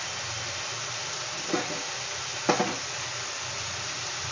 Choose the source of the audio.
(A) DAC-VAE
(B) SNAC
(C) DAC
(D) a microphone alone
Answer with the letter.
D